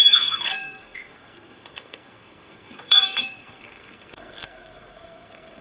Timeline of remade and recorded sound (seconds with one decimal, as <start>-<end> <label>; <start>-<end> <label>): 0.0-5.6 remade